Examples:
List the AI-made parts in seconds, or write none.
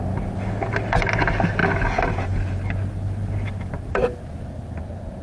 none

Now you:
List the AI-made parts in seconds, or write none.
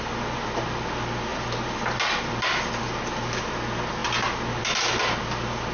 none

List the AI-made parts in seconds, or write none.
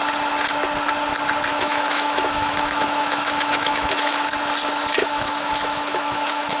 1.5-4.3 (autoencoder, DAC-VAE); 5.0-6.6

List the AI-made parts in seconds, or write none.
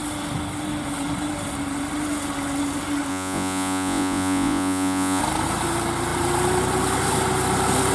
3.1-5.2 (vocoder, Vocos)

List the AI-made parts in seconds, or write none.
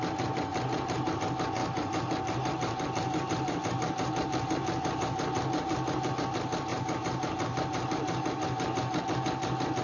0.5-1.2 (vocoder, BigVGAN v2); 1.6-6.1; 6.7-9.0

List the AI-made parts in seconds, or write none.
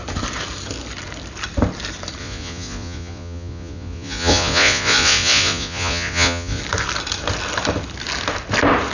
2.2-6.6 (vocoder, Vocos)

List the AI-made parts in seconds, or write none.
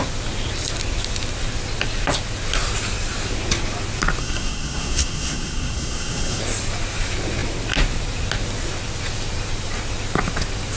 4.2-6.4 (codec, SNAC)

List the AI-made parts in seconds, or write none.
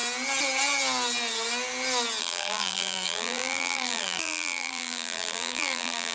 2.2-6.1 (vocoder, BigVGAN v2)